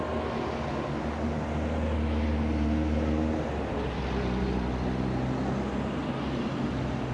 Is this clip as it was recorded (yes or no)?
yes